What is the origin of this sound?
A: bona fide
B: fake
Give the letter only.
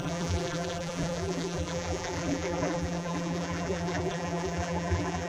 B